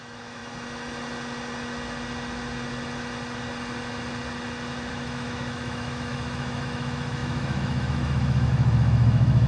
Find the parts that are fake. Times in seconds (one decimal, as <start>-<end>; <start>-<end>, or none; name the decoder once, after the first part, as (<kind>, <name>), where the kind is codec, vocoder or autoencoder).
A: 0.0-0.4 (autoencoder, DAC-VAE); 4.9-9.5